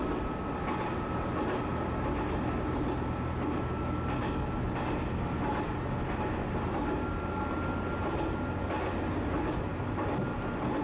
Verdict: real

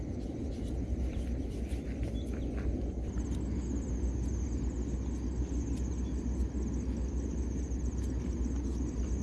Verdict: real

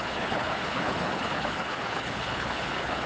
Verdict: fake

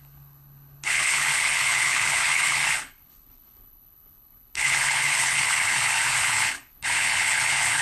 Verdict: fake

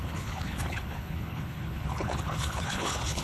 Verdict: fake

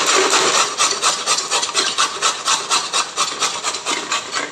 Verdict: real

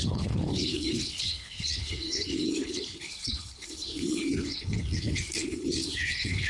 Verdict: fake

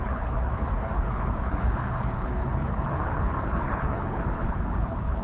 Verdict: fake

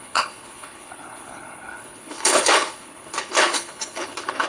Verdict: fake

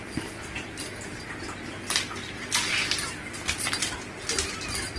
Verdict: real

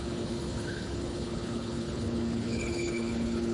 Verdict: fake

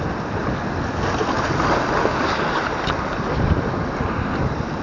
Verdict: real